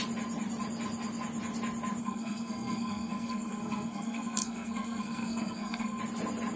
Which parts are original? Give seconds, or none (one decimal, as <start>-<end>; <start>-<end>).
0.0-2.0; 6.0-6.6